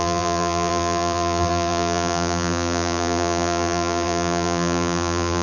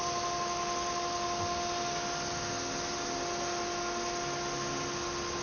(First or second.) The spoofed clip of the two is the first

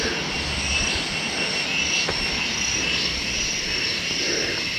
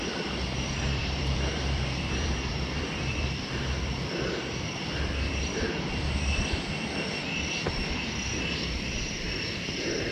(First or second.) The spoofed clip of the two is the second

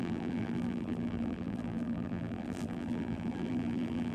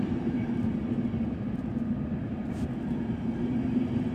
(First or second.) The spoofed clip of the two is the first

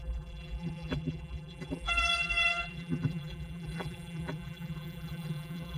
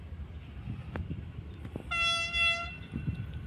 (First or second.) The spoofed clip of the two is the first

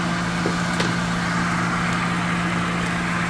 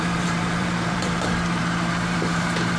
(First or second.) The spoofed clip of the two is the second